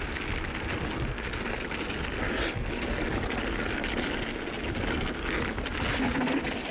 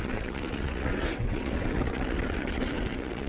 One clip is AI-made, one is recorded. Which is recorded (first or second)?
first